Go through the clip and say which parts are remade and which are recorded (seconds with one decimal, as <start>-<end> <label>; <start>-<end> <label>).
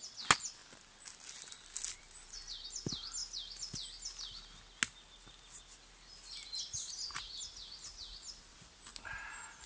0.0-9.7 recorded